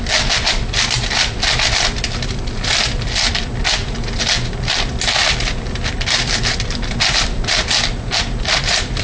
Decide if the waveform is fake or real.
fake